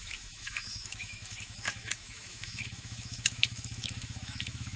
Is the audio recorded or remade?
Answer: remade